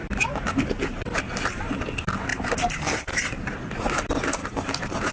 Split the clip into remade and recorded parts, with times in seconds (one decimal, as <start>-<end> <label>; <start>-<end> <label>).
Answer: 0.0-1.6 remade; 1.6-2.3 recorded; 2.3-3.5 remade; 3.5-4.4 recorded; 4.4-5.1 remade